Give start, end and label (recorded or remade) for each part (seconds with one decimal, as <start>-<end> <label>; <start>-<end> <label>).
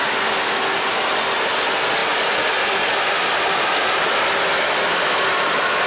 0.0-5.9 recorded